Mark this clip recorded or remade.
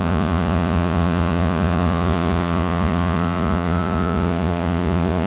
remade